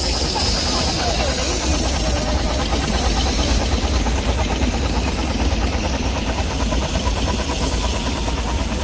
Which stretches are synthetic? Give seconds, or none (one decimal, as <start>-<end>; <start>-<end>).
none